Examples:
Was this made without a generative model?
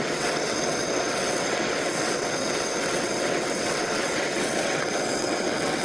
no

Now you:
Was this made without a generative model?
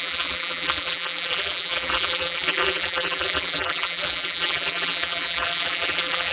no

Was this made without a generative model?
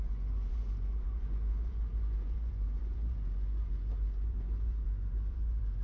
no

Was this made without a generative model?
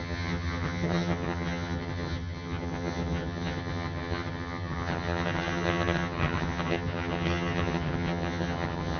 no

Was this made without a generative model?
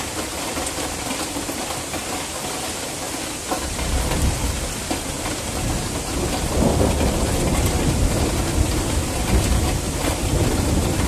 yes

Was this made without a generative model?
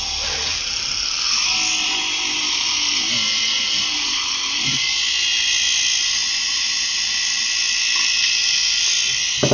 yes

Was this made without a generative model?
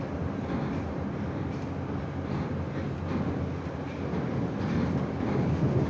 yes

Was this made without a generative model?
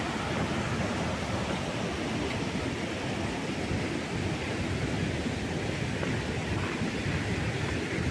yes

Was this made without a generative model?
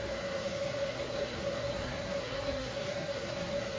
no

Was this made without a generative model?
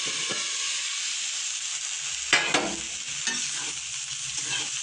yes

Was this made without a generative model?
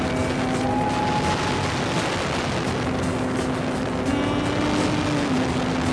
yes